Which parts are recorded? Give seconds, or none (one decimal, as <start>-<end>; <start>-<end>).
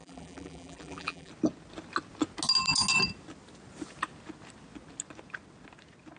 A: 1.3-6.2